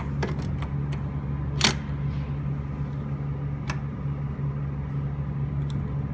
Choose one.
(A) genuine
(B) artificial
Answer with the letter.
A